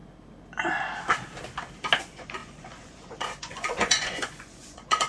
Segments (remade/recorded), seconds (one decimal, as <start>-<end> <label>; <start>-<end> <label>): 0.0-2.0 recorded; 2.0-5.1 remade